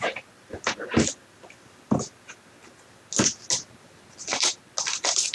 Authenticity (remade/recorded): recorded